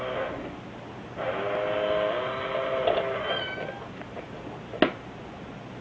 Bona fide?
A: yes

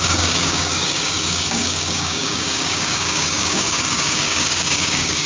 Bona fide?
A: no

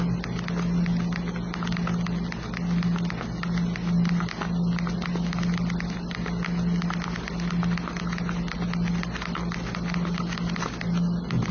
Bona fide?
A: yes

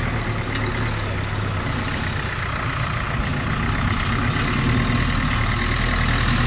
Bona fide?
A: yes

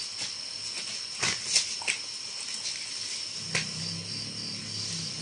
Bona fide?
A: yes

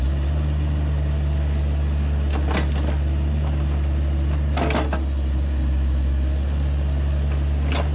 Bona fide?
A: yes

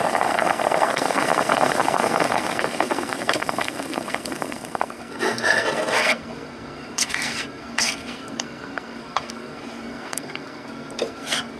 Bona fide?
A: no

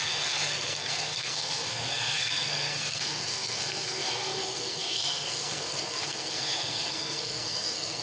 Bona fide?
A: no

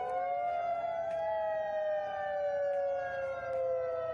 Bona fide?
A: yes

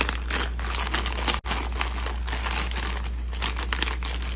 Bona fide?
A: yes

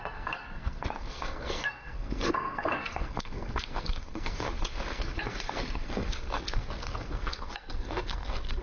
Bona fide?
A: no